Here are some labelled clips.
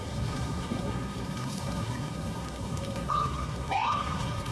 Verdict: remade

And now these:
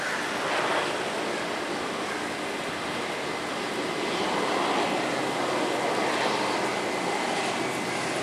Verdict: recorded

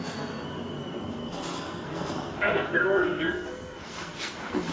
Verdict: remade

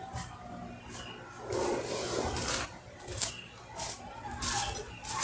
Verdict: recorded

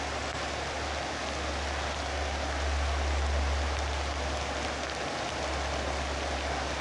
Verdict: recorded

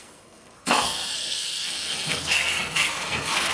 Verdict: remade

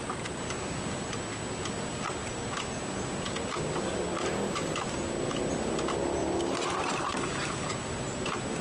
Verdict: recorded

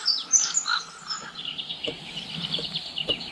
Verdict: recorded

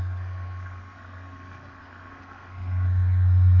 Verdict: remade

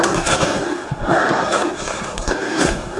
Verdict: remade